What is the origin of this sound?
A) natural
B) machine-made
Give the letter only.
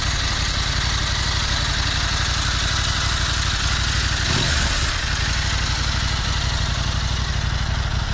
A